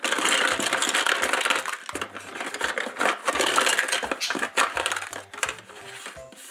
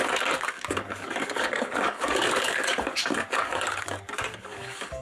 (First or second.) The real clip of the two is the first